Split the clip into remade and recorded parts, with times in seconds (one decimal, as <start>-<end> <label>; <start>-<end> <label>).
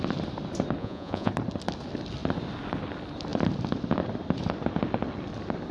0.0-0.8 recorded; 0.8-1.3 remade; 1.3-5.7 recorded